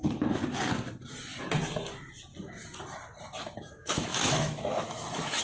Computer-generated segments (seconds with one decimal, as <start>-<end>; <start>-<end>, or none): 0.0-0.4; 3.6-5.4